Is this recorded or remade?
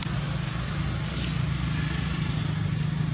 recorded